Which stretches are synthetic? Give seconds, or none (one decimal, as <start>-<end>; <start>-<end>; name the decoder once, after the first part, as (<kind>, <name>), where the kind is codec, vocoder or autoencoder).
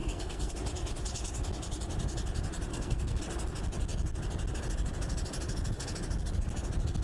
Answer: 0.0-0.5 (codec, SNAC); 2.7-3.2